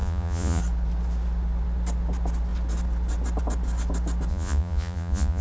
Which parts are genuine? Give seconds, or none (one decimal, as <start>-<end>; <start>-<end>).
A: 0.6-4.3